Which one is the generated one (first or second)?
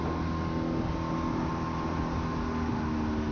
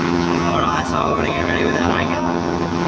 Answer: second